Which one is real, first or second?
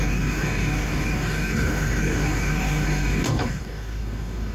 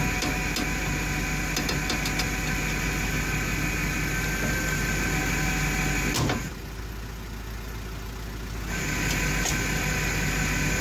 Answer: second